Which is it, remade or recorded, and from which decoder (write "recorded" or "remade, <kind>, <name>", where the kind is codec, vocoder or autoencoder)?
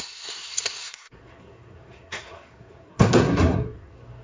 remade, codec, SNAC